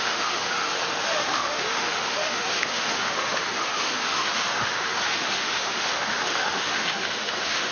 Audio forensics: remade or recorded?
remade